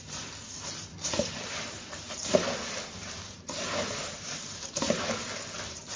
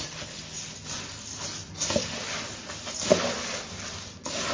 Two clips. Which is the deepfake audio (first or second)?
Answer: first